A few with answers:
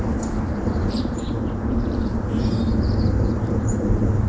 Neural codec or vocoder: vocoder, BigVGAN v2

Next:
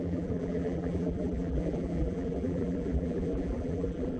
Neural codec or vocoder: vocoder, BigVGAN v2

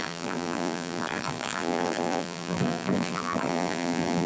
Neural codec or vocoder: vocoder, BigVGAN v2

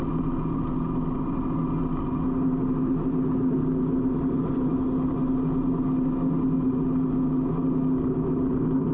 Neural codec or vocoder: none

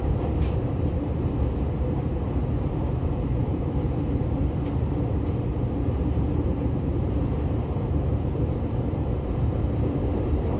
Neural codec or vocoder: vocoder, BigVGAN v2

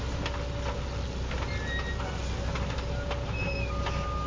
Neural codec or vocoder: none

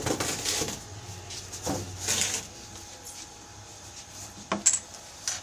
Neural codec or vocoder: none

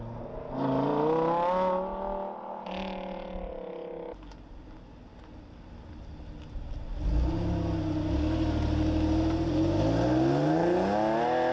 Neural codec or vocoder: none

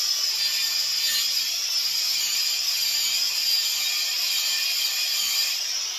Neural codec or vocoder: none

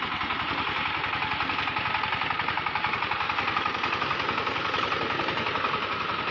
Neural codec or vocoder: none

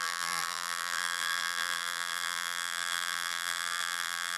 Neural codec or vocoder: vocoder, BigVGAN v2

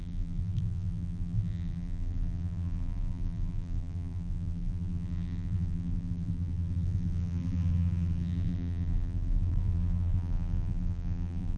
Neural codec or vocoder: vocoder, BigVGAN v2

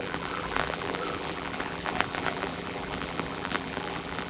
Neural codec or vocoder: vocoder, BigVGAN v2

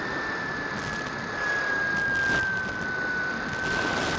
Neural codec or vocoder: none